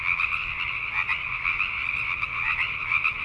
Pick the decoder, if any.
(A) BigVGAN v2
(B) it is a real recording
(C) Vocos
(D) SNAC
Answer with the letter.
B